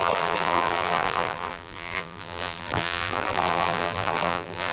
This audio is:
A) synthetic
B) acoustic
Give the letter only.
A